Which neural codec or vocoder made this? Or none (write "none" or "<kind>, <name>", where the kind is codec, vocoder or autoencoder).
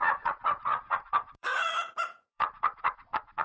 vocoder, Vocos